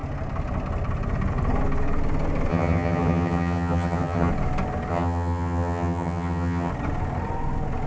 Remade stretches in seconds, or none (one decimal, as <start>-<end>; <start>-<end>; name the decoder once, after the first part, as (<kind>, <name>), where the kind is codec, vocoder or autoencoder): 2.5-4.3 (vocoder, HiFi-GAN); 4.9-6.7